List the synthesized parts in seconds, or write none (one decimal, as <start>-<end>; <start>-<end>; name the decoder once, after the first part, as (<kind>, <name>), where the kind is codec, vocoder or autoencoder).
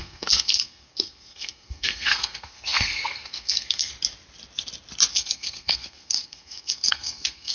0.0-3.9 (codec, SNAC); 5.1-7.5